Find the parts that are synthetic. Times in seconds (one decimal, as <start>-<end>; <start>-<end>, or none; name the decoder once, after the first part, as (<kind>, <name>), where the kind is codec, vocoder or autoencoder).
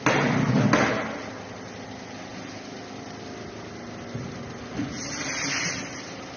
none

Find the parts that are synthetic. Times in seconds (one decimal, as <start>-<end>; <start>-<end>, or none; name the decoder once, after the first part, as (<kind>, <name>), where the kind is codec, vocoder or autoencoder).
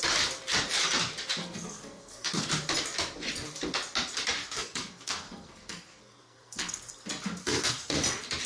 1.4-2.5 (codec, SNAC); 4.4-6.9; 7.4-8.0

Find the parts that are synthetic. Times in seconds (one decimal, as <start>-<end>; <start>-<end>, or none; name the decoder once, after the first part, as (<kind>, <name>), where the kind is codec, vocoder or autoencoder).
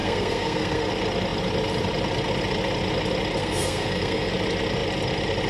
0.0-0.9 (codec, SNAC); 3.4-4.3